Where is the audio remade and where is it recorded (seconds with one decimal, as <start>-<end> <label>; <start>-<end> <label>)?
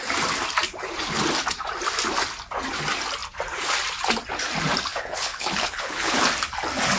0.0-4.9 recorded; 4.9-6.2 remade; 6.2-7.0 recorded